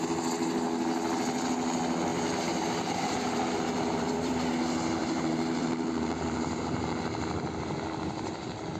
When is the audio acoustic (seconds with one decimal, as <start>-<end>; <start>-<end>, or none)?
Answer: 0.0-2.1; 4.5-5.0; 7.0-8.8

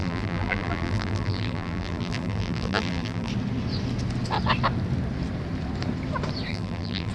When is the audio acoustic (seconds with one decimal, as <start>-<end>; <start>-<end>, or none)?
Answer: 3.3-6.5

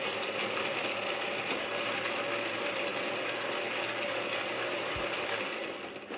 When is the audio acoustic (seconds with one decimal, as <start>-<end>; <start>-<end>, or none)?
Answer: 0.8-1.9; 2.9-5.7